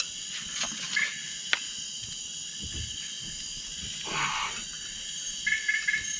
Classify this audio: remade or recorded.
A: recorded